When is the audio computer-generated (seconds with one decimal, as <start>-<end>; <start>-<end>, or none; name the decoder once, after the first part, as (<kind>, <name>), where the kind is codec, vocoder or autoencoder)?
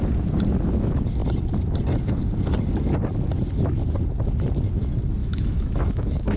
5.2-6.4 (autoencoder, DAC-VAE)